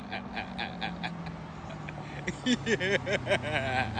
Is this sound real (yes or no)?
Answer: yes